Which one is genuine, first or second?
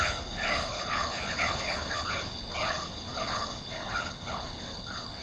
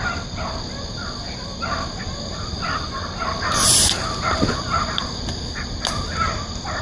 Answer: second